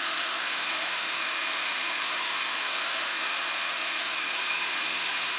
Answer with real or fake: fake